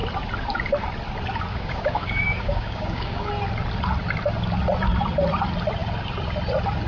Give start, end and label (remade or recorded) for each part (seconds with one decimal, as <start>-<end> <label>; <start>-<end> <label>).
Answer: 0.0-1.5 recorded; 1.5-3.3 remade; 3.3-6.9 recorded